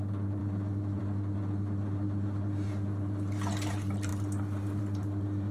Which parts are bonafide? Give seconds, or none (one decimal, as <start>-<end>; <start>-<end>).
0.0-5.5